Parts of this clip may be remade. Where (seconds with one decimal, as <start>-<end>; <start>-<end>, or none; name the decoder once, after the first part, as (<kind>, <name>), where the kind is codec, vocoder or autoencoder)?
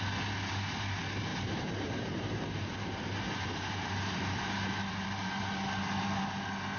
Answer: 1.3-5.4 (vocoder, BigVGAN v2)